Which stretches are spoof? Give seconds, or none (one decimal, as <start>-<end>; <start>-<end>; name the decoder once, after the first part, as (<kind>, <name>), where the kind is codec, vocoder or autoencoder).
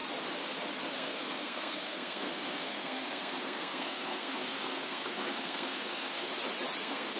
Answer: 0.9-6.3 (codec, SNAC); 6.8-7.2